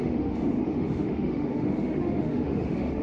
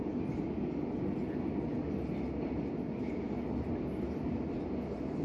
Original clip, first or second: second